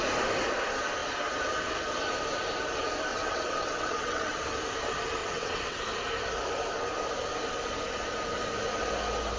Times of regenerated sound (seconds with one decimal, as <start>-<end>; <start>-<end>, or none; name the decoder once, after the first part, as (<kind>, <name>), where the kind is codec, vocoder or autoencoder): 3.1-4.3 (vocoder, WaveNeXt); 5.2-5.8

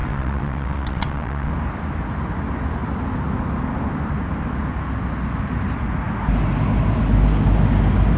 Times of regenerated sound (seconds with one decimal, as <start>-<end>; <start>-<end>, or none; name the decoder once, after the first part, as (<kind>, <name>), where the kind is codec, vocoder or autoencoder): 0.0-1.5 (vocoder, WaveNeXt)

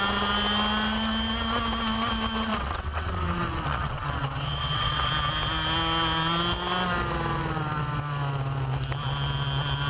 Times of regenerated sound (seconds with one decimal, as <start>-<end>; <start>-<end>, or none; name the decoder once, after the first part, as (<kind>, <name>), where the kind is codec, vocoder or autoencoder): 2.5-5.1 (vocoder, WaveNeXt)

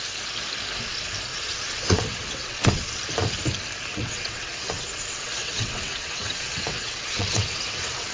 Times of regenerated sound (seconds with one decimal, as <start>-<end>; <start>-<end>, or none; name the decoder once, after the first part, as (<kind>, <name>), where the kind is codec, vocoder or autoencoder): 1.3-3.0 (vocoder, WaveNeXt); 3.9-8.1

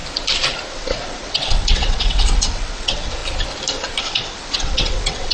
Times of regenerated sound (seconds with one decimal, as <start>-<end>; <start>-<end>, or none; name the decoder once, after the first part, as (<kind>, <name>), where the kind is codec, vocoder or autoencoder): 0.7-3.2 (vocoder, WaveNeXt); 4.0-5.3

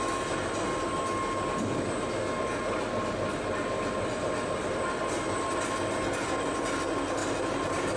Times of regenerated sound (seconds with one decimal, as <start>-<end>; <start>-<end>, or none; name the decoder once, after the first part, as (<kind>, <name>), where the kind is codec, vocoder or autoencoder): none

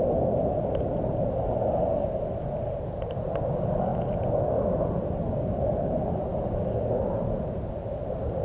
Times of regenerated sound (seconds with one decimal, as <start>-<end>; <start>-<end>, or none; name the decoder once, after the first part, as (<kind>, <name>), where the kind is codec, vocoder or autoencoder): none